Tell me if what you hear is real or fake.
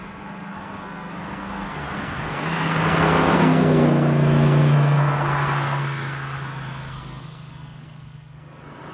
fake